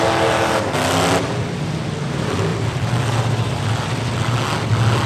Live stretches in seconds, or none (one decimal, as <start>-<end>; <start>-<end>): 0.0-2.5; 4.0-5.1